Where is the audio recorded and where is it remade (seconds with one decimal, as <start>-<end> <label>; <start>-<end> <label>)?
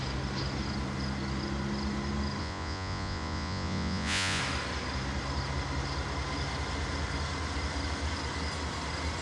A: 0.0-2.4 recorded; 2.4-4.4 remade; 4.4-9.2 recorded